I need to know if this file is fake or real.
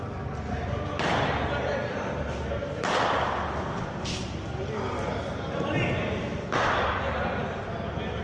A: real